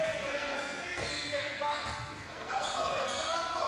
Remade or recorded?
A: remade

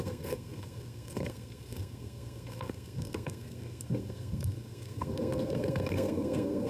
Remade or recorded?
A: remade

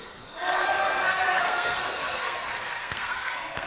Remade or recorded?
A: remade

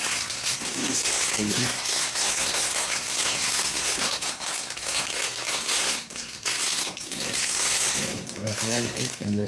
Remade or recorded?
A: remade